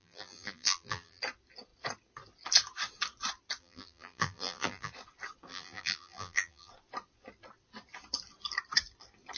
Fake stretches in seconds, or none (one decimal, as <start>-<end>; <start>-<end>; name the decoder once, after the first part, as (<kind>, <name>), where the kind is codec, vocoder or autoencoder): 0.0-1.2 (vocoder, BigVGAN v2); 3.6-4.9; 5.5-6.7